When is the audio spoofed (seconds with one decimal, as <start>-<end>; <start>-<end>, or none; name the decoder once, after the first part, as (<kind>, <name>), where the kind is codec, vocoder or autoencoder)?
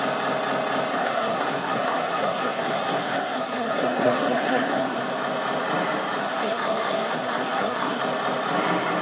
0.9-5.0 (codec, SNAC); 6.2-8.0